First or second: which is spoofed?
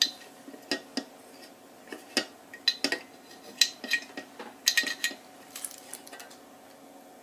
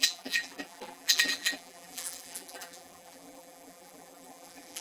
second